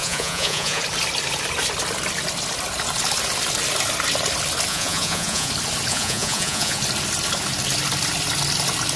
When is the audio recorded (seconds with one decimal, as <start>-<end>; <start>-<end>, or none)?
0.8-4.7; 5.5-5.9; 6.8-9.0